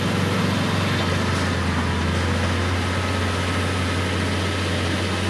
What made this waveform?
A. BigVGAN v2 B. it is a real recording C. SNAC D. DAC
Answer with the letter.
B